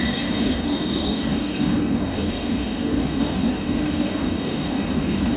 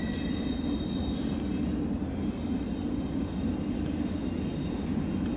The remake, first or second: first